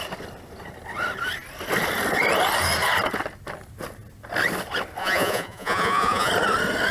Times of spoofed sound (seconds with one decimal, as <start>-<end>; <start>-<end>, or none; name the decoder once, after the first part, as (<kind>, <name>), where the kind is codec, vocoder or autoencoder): 5.0-6.3 (vocoder, Vocos)